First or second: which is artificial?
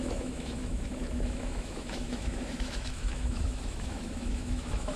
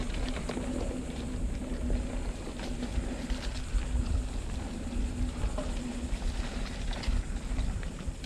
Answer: first